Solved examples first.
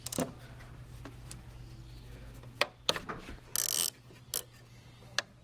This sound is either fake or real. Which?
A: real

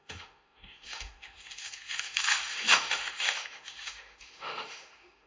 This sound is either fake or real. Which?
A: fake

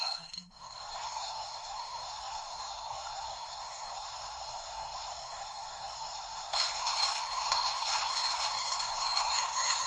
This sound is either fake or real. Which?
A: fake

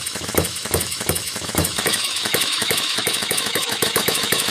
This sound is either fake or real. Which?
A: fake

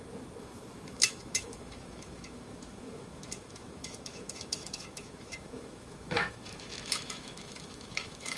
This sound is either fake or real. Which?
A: fake